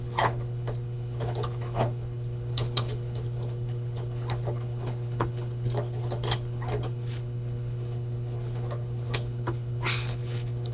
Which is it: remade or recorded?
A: remade